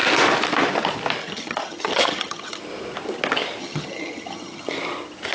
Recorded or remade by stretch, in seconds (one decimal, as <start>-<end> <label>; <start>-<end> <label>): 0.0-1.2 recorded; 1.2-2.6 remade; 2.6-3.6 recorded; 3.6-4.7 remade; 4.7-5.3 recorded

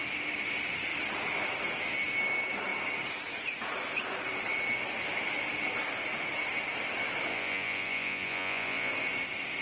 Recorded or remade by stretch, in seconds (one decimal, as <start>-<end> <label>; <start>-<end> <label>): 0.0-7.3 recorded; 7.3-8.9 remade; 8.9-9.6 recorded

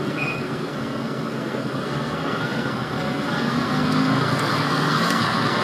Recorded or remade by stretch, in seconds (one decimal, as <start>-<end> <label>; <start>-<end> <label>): 0.0-5.6 remade